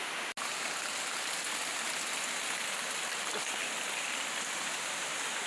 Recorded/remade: recorded